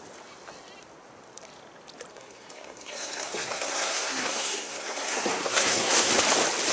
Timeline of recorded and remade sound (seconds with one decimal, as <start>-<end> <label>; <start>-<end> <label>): 0.0-2.1 recorded; 2.1-6.1 remade; 6.1-6.7 recorded